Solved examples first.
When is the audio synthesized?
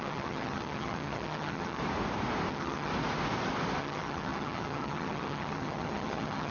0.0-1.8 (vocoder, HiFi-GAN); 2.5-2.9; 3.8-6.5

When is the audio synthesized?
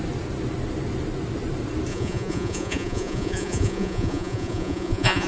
1.9-5.3 (vocoder, Vocos)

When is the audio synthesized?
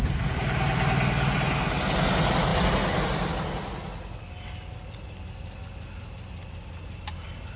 none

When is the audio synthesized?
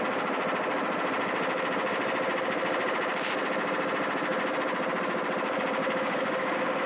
5.8-6.5 (codec, DAC)